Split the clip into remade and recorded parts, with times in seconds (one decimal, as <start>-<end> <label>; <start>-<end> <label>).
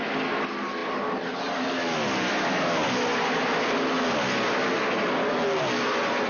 0.0-6.3 recorded